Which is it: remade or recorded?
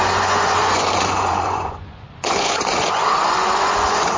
remade